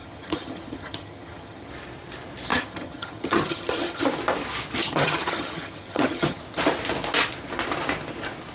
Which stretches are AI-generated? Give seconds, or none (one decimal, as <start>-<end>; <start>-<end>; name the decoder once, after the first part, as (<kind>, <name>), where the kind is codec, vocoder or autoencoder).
0.0-1.7 (vocoder, HiFi-GAN); 2.5-4.0; 4.8-6.4